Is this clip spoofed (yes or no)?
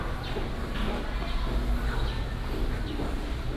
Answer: no